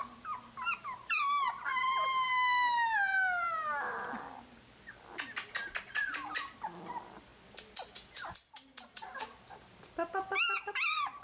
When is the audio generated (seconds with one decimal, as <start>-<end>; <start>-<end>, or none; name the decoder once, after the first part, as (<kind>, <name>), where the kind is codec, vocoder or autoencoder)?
none